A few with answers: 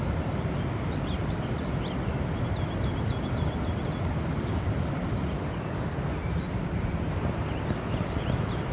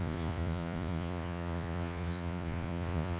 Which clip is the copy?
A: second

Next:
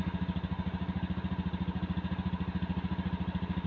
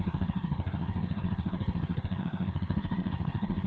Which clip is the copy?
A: second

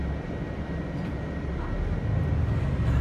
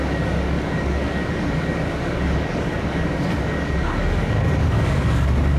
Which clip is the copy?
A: second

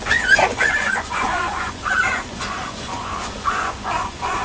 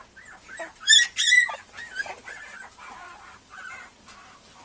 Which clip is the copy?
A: first